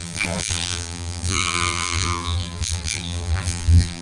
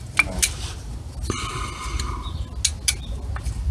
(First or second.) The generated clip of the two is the first